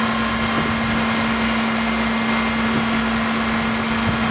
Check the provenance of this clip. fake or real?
real